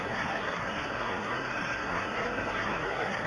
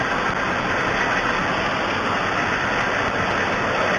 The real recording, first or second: second